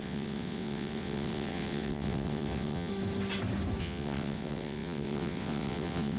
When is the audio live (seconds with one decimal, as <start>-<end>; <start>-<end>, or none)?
2.9-3.8